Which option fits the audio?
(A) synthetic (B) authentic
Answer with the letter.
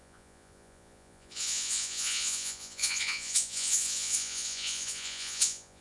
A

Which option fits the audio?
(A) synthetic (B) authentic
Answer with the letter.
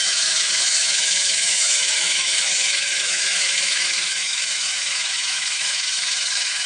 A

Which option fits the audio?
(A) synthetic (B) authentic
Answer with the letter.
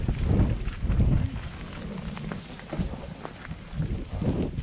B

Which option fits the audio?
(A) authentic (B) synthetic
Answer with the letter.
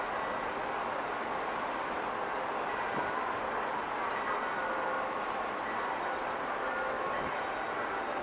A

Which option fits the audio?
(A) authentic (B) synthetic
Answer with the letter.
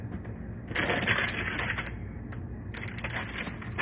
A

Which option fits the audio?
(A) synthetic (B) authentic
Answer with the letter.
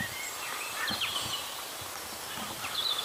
A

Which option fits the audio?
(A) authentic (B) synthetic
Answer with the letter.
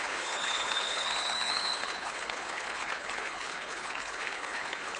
B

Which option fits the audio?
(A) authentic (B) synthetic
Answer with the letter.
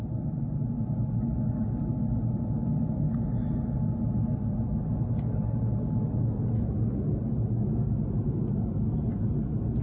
A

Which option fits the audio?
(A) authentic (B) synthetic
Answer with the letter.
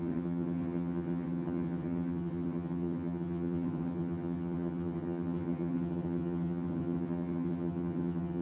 B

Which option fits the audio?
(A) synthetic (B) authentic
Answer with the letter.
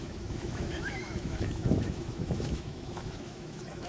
A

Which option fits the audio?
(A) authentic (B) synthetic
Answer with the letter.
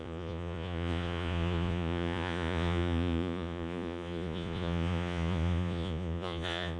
B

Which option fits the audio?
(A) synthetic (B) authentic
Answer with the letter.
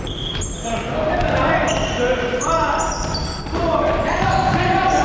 B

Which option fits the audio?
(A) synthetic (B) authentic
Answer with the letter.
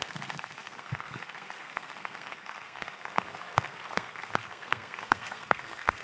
A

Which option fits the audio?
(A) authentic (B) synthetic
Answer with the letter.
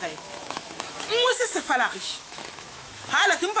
B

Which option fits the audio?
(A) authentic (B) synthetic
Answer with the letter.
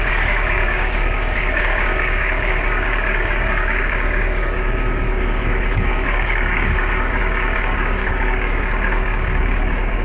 B